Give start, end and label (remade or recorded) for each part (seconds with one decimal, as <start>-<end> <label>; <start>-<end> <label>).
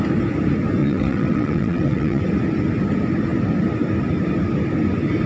0.0-0.8 recorded; 0.8-2.2 remade; 2.2-5.3 recorded